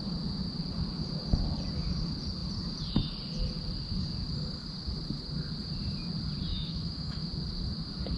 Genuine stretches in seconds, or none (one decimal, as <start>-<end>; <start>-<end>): 0.0-6.5; 7.3-8.2